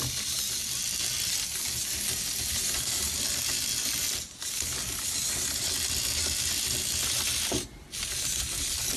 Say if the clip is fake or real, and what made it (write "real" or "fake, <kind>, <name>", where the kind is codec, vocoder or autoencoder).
real